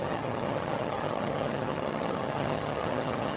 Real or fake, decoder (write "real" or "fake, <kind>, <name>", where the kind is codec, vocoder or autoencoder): fake, vocoder, HiFi-GAN